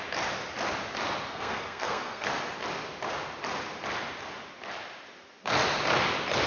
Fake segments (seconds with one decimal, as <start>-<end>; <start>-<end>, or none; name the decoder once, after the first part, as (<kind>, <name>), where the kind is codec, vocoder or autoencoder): 1.3-2.3 (codec, SNAC)